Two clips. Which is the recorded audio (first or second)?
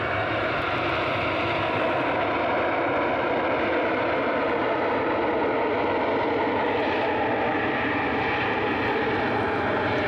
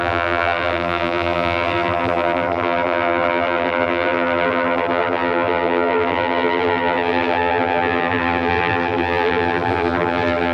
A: first